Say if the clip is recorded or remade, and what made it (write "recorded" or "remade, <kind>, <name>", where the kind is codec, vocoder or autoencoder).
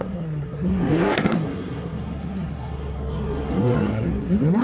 remade, codec, SNAC